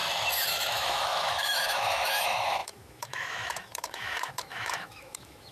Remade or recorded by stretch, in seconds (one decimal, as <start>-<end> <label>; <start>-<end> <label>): 0.0-0.7 recorded; 0.7-5.5 remade